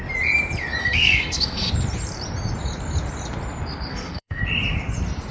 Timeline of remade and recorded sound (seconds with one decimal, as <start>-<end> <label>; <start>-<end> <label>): 0.0-0.8 recorded; 0.8-1.7 remade; 1.7-3.9 recorded; 3.9-4.4 remade; 4.4-5.3 recorded